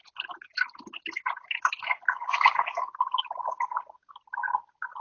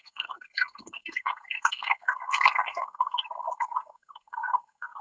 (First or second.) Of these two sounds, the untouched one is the first